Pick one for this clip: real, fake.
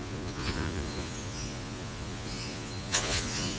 fake